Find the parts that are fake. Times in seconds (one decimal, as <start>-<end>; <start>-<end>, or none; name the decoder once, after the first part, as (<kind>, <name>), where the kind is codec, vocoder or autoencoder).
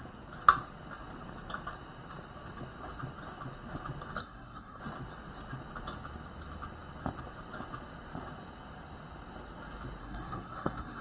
4.2-4.8 (codec, SNAC); 10.0-11.0